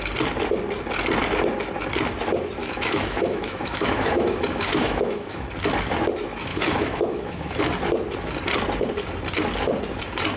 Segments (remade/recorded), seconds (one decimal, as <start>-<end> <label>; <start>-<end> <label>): 0.0-2.6 recorded; 2.6-5.5 remade; 5.5-6.5 recorded; 6.5-7.6 remade; 7.6-10.4 recorded